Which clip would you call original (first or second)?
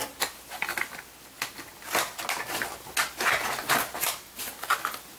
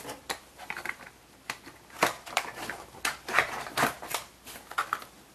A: first